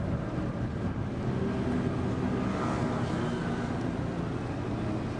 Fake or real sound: real